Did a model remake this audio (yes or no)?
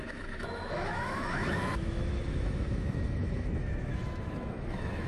yes